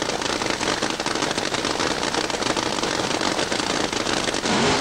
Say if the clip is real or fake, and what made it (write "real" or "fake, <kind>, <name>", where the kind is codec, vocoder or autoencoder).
real